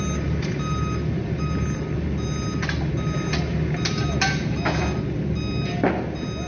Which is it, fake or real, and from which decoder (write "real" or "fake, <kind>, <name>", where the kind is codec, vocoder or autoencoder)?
real